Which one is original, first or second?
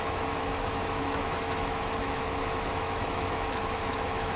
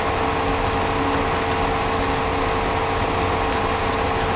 second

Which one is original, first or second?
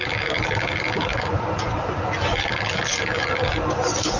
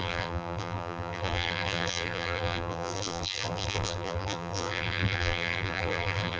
first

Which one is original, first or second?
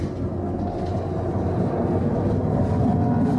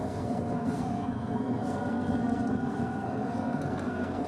first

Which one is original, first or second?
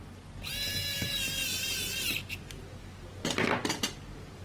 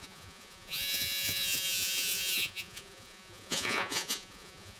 first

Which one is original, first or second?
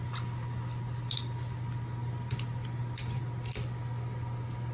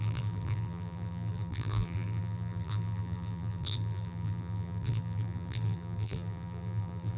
first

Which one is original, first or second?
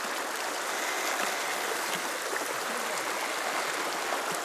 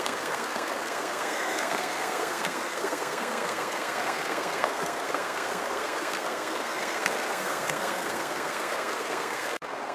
first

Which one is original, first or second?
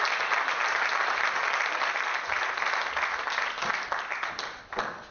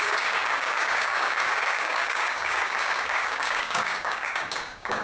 first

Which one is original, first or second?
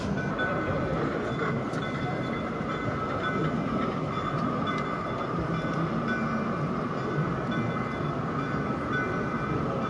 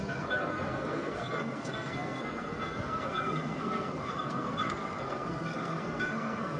first